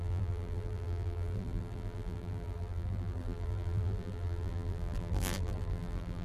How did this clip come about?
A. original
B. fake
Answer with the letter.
B